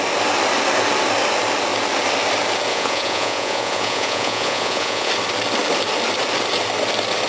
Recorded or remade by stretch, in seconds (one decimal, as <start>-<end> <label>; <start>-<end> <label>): 0.0-2.7 recorded; 2.7-5.1 remade; 5.1-7.3 recorded